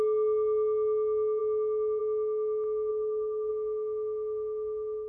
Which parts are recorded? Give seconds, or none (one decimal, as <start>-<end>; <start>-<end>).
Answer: 0.0-2.9; 3.5-5.1